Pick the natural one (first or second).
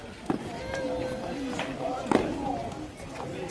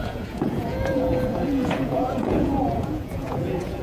first